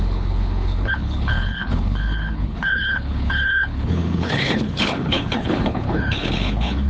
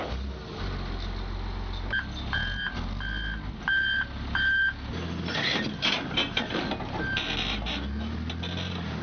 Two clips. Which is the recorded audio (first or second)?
second